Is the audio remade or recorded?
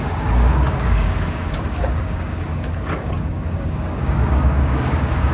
remade